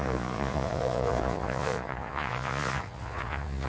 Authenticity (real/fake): fake